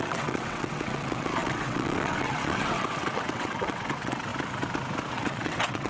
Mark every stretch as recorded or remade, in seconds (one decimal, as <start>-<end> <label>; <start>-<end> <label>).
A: 0.0-4.3 remade; 4.3-5.1 recorded; 5.1-5.9 remade